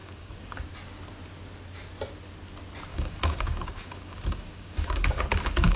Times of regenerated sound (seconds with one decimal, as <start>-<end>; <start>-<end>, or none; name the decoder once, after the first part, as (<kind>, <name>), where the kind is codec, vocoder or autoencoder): 0.0-0.7 (codec, DAC); 2.9-5.8